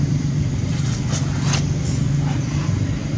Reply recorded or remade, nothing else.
recorded